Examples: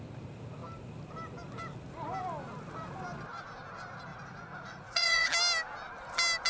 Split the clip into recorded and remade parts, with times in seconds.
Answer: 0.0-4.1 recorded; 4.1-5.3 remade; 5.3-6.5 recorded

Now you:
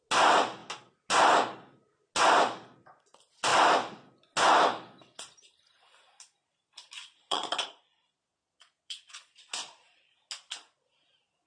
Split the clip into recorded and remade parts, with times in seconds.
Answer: 0.0-7.0 recorded; 7.0-10.1 remade; 10.1-11.5 recorded

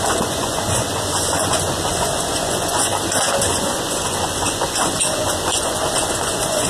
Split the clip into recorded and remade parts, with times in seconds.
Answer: 0.0-2.9 remade; 2.9-3.5 recorded; 3.5-6.7 remade

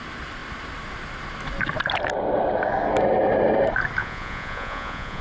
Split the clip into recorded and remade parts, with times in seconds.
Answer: 0.0-4.0 recorded; 4.0-5.2 remade

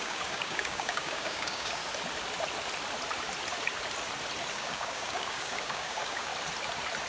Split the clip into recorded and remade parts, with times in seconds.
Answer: 0.0-1.8 remade; 1.8-4.5 recorded; 4.5-6.3 remade; 6.3-7.1 recorded

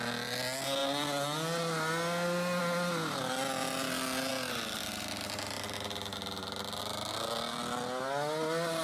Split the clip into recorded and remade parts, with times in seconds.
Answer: 0.0-8.8 recorded

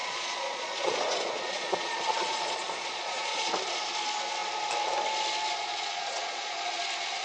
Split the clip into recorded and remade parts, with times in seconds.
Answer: 0.0-3.5 remade; 3.5-5.7 recorded; 5.7-6.8 remade; 6.8-7.2 recorded

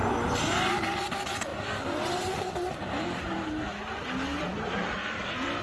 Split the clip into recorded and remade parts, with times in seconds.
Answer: 0.0-1.5 recorded; 1.5-3.0 remade; 3.0-4.3 recorded; 4.3-5.6 remade